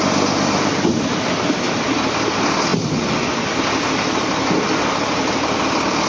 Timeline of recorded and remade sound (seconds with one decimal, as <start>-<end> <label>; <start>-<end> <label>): 0.0-6.1 recorded